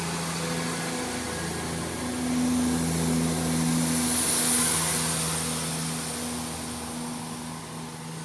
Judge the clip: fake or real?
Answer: real